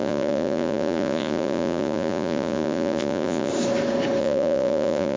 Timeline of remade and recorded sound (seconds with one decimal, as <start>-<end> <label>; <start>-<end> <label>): 0.0-3.5 remade; 3.5-4.2 recorded; 4.2-5.2 remade